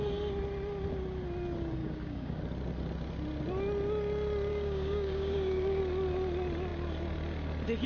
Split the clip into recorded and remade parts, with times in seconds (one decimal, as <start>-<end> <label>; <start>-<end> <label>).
0.0-1.8 recorded; 1.8-2.4 remade; 2.4-4.5 recorded; 4.5-5.8 remade; 5.8-7.9 recorded